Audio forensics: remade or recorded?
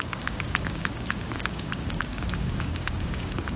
remade